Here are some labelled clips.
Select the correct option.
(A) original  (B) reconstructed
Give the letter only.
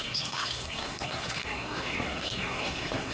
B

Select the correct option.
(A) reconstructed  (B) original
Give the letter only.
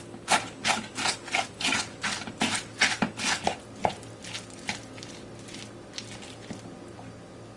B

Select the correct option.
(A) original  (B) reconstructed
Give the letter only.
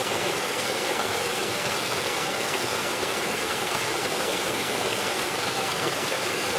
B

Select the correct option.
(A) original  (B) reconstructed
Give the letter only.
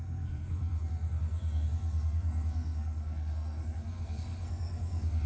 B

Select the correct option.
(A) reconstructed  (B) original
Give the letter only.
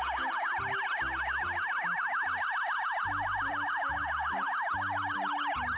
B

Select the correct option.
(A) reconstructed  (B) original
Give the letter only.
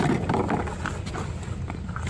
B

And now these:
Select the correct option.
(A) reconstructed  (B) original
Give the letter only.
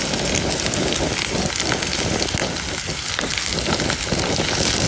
B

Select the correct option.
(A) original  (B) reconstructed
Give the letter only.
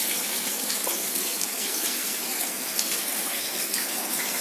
B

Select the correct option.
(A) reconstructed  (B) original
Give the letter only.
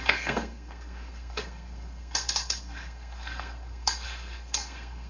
A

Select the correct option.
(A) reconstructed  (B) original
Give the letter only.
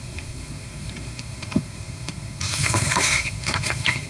A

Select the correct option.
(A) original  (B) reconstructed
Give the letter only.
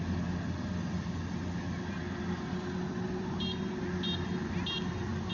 A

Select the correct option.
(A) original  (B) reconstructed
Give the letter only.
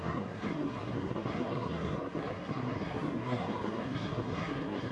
B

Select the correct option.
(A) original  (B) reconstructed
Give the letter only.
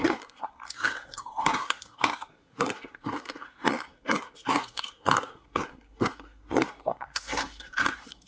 B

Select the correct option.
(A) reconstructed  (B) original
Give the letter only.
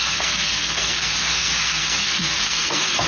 A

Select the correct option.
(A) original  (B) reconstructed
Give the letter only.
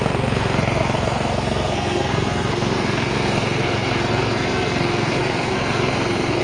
B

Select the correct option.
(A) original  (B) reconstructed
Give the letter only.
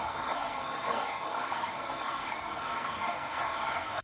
B